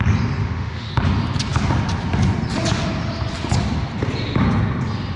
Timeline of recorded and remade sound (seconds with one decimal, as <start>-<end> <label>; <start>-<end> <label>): 0.0-0.4 recorded; 0.4-0.9 remade; 0.9-5.2 recorded